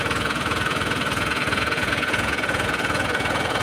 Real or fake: fake